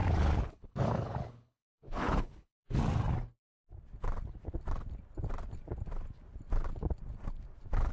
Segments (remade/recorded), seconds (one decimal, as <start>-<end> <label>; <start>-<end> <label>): 0.0-2.8 remade; 2.8-7.9 recorded